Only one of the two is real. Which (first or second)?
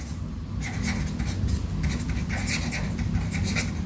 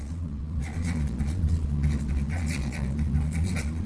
first